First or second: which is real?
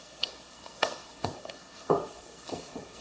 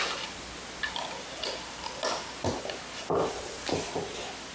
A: second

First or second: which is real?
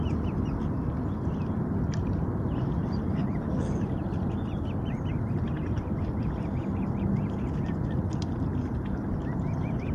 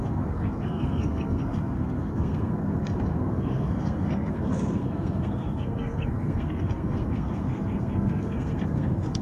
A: first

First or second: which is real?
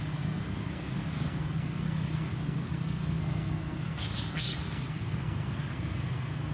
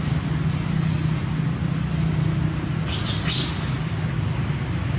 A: second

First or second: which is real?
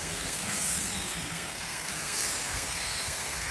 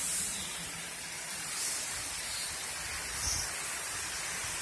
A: second